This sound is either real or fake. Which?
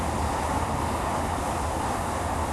real